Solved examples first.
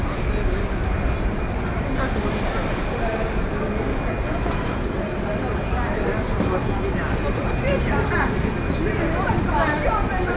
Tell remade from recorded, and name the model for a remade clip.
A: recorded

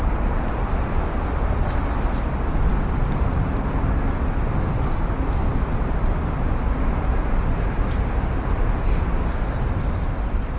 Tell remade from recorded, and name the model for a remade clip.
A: recorded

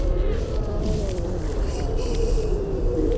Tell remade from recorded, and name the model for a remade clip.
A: remade, vocoder, BigVGAN v2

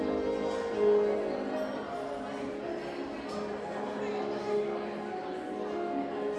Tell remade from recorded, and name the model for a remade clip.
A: recorded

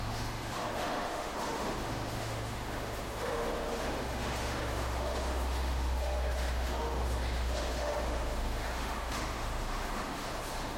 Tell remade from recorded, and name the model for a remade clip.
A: remade, autoencoder, DAC-VAE